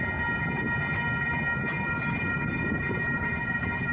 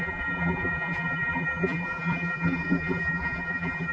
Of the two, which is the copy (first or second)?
second